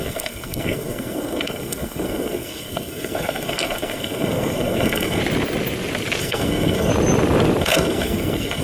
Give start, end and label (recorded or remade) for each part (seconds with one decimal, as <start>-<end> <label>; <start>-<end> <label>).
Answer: 0.0-5.2 remade; 5.2-6.2 recorded; 6.2-6.9 remade; 6.9-7.6 recorded; 7.6-8.6 remade